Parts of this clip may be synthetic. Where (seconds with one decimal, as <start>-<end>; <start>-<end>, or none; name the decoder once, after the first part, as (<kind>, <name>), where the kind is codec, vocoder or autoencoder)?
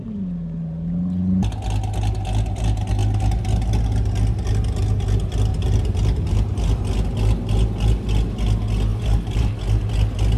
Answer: 5.5-6.8 (vocoder, BigVGAN v2); 8.9-9.5